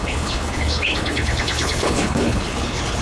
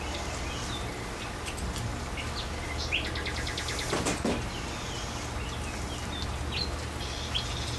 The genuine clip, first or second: second